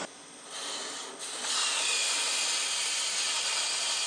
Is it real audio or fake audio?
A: real